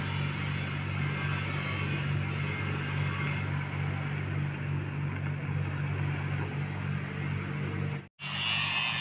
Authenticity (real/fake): real